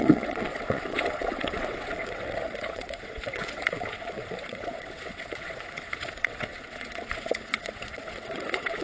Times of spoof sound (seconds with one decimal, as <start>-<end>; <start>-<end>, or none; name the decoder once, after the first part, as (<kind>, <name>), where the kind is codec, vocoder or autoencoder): 0.0-8.8 (vocoder, WaveNeXt)